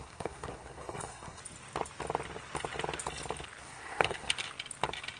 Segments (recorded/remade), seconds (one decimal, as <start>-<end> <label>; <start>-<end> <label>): 0.0-1.4 remade; 1.4-3.6 recorded; 3.6-4.3 remade; 4.3-5.2 recorded